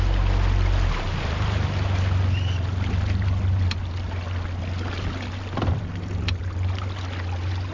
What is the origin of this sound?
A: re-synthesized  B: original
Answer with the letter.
B